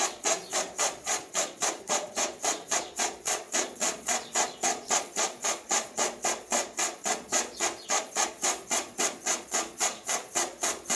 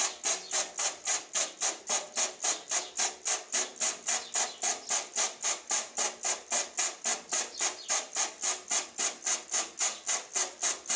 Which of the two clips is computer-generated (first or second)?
first